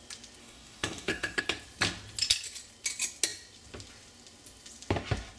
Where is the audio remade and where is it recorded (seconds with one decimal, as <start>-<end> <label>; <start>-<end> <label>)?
0.0-0.4 recorded; 0.4-1.4 remade; 1.4-5.4 recorded